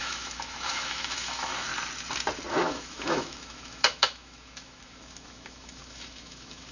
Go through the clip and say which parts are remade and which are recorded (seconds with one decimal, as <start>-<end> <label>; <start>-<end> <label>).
0.0-1.7 remade; 1.7-2.5 recorded; 2.5-6.7 remade